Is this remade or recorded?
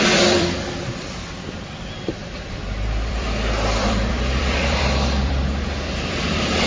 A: remade